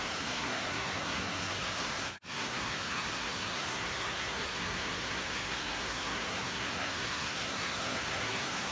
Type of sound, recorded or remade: remade